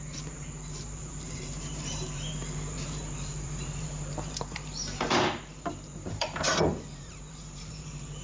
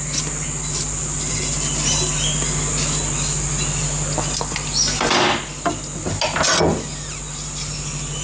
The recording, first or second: second